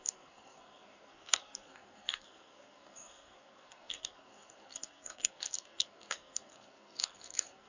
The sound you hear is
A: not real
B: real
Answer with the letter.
A